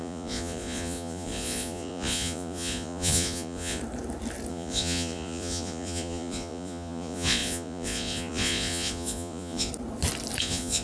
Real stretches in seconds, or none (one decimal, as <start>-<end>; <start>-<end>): 3.8-4.5; 9.7-10.4